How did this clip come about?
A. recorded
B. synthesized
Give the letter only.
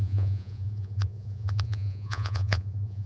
B